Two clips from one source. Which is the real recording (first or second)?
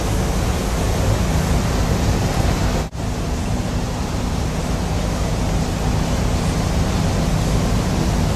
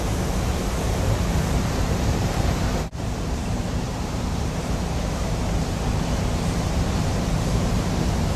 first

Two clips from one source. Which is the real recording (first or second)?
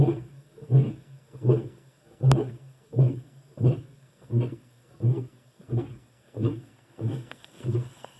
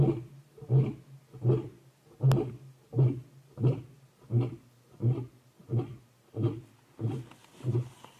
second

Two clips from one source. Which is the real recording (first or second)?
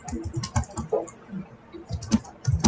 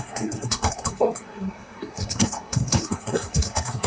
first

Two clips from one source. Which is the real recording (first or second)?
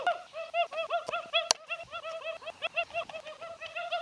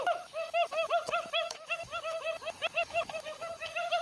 first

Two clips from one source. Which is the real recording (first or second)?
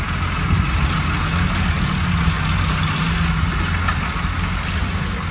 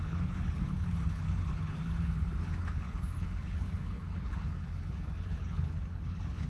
first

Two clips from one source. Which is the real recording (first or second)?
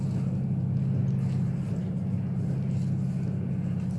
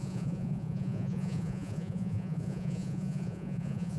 first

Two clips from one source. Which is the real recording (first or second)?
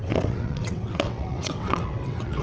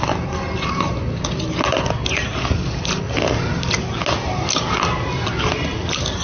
second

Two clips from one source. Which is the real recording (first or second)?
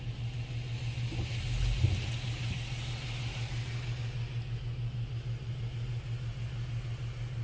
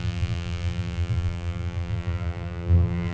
first